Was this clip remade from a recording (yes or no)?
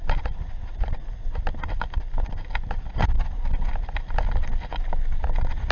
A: no